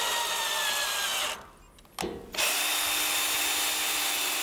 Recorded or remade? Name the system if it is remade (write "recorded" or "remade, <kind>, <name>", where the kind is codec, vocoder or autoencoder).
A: recorded